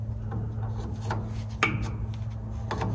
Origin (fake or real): real